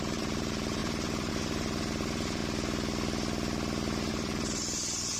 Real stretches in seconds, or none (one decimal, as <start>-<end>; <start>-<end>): 2.4-4.1